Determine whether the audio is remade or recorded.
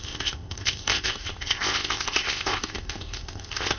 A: remade